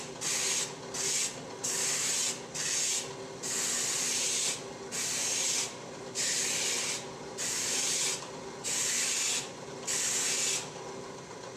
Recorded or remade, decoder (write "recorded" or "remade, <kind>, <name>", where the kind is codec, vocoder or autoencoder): recorded